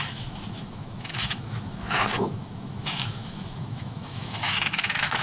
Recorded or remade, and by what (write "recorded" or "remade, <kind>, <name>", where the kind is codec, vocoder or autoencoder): remade, autoencoder, DAC-VAE